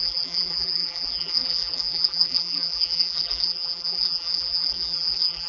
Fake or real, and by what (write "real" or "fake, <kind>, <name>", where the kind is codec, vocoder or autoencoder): fake, vocoder, BigVGAN v2